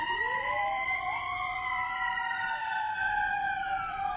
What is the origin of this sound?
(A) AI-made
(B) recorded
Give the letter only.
A